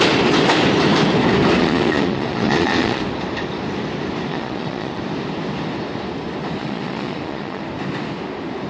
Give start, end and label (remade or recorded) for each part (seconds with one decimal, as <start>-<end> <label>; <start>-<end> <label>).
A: 0.0-1.6 recorded; 1.6-3.0 remade; 3.0-4.3 recorded; 4.3-5.0 remade; 5.0-6.6 recorded; 6.6-7.6 remade; 7.6-8.7 recorded